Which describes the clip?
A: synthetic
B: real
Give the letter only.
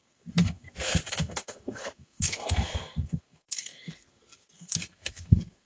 A